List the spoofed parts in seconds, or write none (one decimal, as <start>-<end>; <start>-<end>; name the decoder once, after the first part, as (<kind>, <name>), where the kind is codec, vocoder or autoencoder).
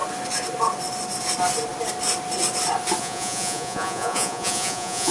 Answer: 3.0-5.1 (vocoder, Vocos)